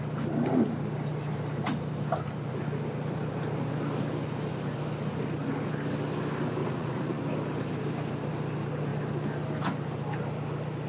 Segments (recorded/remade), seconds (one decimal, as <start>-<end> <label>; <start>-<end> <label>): 0.0-6.6 recorded; 6.6-7.2 remade; 7.2-10.9 recorded